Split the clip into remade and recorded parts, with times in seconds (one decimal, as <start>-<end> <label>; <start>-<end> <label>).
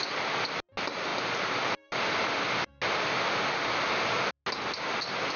0.0-5.4 recorded